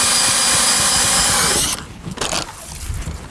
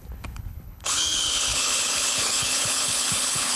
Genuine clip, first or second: first